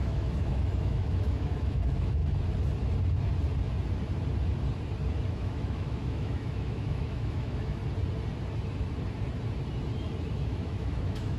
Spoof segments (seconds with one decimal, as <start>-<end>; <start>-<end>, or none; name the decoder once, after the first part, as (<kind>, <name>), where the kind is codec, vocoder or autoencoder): 0.0-2.2 (autoencoder, DAC-VAE); 5.3-7.8; 10.3-11.4